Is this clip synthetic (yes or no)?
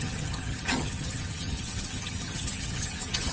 yes